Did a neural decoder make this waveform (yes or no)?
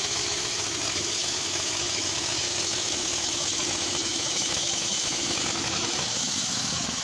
yes